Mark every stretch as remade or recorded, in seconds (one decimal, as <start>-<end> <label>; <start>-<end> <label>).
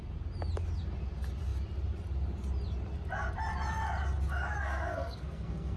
0.0-4.6 recorded; 4.6-5.8 remade